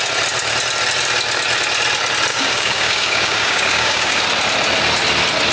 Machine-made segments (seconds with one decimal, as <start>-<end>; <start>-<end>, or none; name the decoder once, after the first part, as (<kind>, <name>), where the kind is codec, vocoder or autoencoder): 2.3-4.2 (codec, DAC)